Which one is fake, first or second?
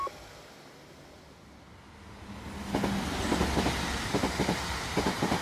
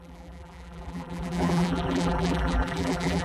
second